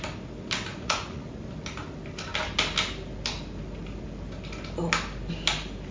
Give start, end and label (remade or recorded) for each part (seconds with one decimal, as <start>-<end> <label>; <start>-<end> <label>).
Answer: 0.0-0.7 recorded; 0.7-1.3 remade; 1.3-5.9 recorded